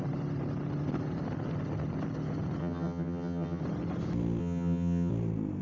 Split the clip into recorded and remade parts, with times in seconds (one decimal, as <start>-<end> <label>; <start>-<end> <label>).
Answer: 0.0-2.6 recorded; 2.6-3.6 remade; 3.6-4.4 recorded; 4.4-5.1 remade; 5.1-5.6 recorded